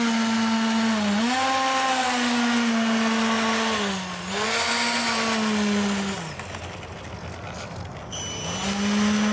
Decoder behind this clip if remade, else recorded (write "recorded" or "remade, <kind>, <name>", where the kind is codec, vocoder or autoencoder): recorded